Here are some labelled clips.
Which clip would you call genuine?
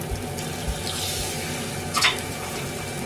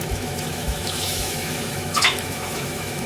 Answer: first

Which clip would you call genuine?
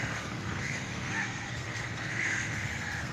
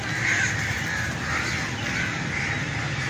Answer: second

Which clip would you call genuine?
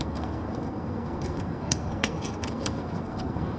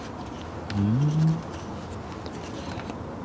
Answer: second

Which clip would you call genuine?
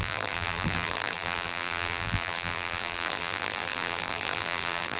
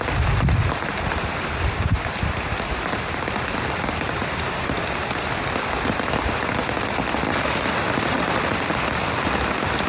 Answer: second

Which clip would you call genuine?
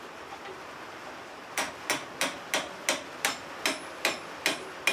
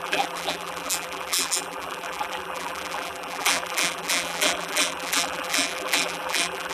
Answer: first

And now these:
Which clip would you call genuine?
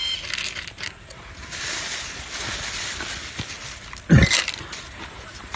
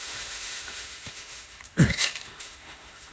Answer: first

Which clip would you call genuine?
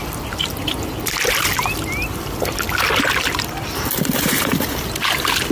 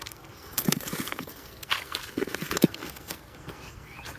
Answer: first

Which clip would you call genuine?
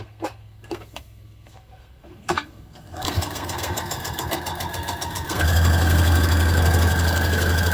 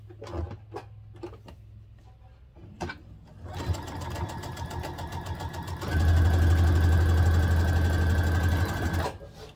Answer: second